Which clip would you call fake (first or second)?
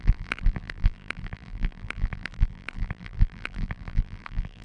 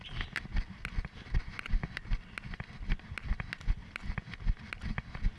first